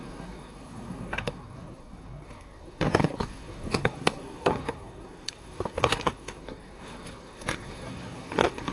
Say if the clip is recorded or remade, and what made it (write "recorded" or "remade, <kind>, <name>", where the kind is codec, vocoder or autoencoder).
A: remade, codec, SNAC